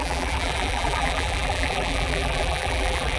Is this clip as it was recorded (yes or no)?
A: no